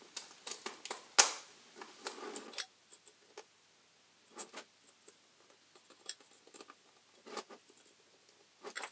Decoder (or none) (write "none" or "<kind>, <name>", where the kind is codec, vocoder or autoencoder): none